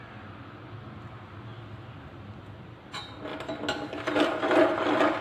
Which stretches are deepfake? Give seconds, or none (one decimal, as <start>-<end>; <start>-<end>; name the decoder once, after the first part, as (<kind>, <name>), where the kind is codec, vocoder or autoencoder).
none